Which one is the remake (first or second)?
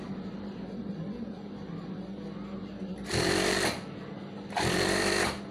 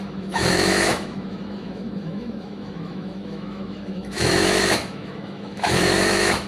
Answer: second